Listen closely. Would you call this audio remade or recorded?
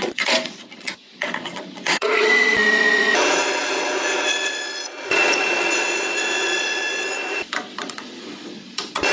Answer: remade